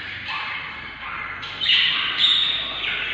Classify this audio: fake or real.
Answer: fake